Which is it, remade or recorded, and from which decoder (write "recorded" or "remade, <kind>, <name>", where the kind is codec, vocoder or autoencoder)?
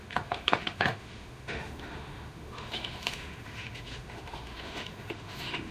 remade, autoencoder, DAC-VAE